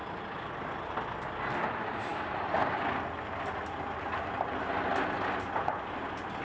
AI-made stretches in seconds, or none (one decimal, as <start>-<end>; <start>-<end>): none